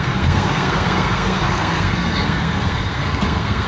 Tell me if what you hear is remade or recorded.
remade